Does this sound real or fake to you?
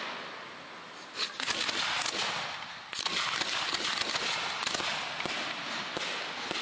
real